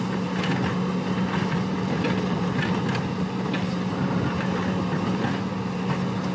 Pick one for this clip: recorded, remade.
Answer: recorded